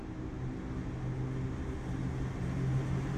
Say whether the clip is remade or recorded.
recorded